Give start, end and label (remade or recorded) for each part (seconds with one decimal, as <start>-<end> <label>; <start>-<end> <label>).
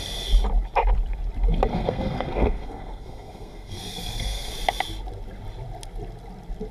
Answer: 0.0-1.7 recorded; 1.7-4.5 remade; 4.5-6.7 recorded